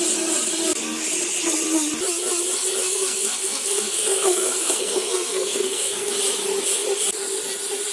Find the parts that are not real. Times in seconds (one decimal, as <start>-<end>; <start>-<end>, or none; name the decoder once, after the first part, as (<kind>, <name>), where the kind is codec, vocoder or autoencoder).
2.8-6.1 (codec, SNAC)